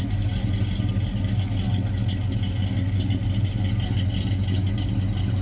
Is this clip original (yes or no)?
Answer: yes